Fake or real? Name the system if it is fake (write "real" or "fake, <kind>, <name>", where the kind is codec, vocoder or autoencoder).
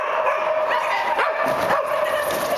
real